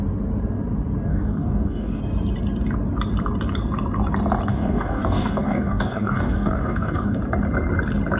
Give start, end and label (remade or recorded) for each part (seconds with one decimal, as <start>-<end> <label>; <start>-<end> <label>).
0.0-1.1 recorded; 1.1-2.0 remade; 2.0-4.5 recorded; 4.5-7.2 remade; 7.2-8.2 recorded